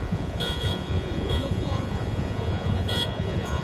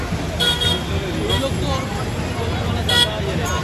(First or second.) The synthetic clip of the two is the first